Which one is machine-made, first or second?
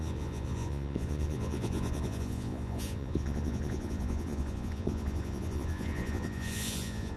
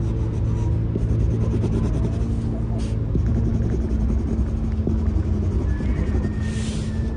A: first